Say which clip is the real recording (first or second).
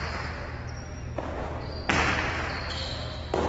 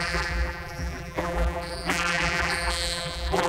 first